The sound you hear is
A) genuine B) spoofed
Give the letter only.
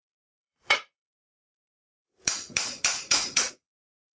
B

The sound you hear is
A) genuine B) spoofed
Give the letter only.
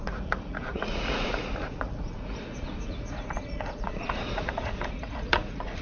B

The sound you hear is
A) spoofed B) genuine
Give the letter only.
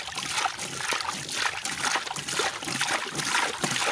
B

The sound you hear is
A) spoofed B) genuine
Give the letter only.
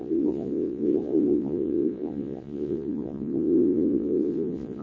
A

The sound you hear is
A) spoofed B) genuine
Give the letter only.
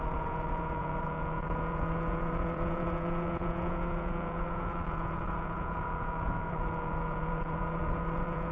A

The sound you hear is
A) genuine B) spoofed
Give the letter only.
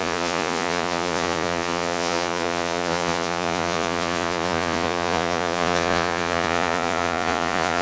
B